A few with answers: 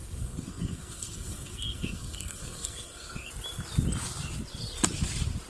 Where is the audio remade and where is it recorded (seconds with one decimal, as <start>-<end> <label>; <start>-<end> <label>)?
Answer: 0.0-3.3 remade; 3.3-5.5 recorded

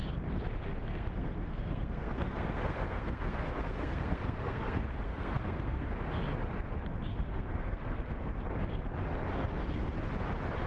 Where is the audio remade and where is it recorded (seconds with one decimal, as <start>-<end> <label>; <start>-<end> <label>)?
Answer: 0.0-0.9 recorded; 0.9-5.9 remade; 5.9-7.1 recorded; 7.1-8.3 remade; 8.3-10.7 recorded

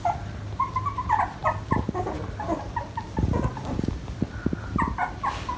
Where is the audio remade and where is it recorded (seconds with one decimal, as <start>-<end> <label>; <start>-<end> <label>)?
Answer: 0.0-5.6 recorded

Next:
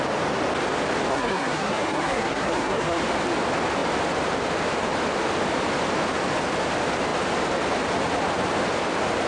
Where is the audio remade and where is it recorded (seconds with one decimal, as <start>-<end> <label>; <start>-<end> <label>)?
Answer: 0.0-1.1 recorded; 1.1-3.0 remade; 3.0-9.3 recorded